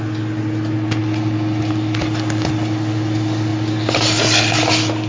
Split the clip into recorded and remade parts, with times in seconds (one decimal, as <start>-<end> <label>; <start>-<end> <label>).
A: 0.0-5.1 recorded